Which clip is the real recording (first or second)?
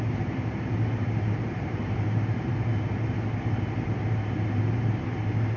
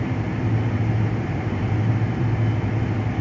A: second